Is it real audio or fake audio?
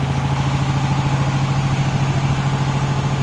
real